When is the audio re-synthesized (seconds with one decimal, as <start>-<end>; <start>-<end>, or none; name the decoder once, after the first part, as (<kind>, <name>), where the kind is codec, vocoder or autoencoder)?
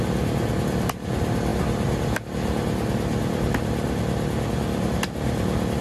none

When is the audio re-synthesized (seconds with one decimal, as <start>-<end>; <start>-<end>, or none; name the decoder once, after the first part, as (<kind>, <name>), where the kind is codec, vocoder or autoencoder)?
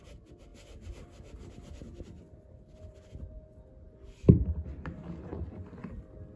none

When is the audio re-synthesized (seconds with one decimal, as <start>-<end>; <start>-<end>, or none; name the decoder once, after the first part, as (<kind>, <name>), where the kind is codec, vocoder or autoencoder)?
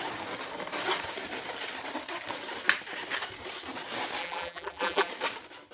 4.2-5.1 (vocoder, BigVGAN v2)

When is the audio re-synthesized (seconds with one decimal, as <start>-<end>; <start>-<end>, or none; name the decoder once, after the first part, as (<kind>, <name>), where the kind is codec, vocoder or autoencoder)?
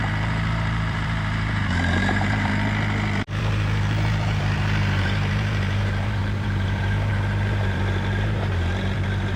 0.0-2.5 (vocoder, BigVGAN v2); 3.4-9.4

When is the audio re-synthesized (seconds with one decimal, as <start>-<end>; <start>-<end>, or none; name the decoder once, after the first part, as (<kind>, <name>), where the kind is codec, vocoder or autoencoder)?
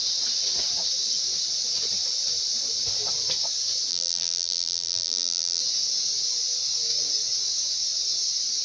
3.9-5.6 (vocoder, BigVGAN v2)